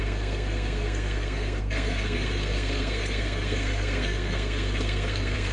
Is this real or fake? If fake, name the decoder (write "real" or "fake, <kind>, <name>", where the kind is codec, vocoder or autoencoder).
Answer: fake, codec, SNAC